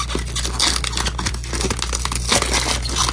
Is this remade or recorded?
recorded